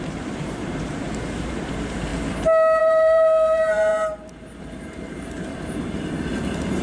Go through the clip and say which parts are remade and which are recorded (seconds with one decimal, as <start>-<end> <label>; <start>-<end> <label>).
0.0-2.1 remade; 2.1-2.8 recorded; 2.8-3.9 remade; 3.9-4.6 recorded; 4.6-6.8 remade